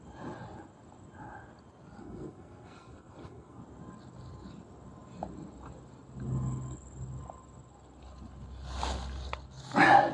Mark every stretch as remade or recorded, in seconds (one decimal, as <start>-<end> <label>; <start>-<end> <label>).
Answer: 0.0-2.0 recorded; 2.0-3.6 remade; 3.6-10.1 recorded